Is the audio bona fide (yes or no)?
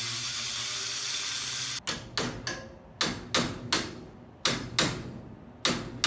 yes